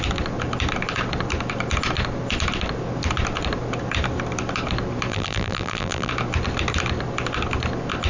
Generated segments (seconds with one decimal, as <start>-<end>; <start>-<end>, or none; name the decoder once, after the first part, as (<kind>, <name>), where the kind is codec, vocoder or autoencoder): 5.1-6.1 (vocoder, BigVGAN v2)